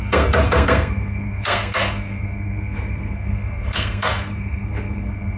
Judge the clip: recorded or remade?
remade